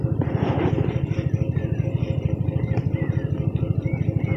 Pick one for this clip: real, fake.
real